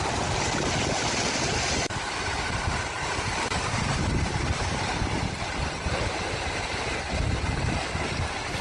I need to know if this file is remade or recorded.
recorded